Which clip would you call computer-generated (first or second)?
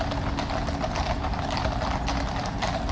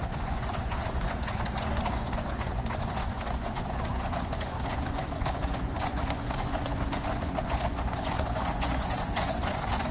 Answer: second